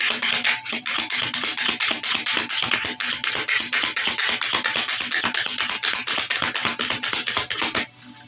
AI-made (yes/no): no